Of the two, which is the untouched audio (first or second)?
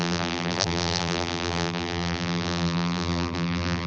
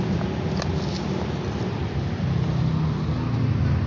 second